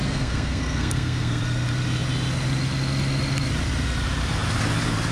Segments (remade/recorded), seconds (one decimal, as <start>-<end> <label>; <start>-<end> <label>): 0.0-1.4 remade; 1.4-5.1 recorded